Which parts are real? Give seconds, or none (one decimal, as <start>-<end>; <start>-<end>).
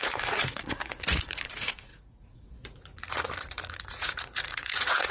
none